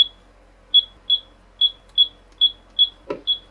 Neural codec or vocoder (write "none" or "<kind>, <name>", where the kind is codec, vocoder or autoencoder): none